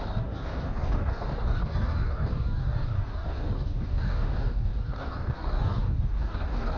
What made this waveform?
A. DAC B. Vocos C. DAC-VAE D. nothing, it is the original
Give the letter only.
A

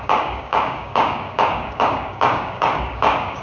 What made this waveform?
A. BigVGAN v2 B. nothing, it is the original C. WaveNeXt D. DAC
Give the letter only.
D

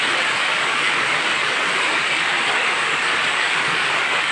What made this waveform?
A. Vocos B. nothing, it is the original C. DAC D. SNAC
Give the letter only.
C